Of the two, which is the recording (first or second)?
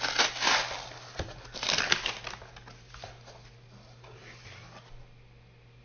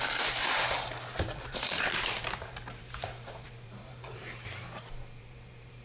first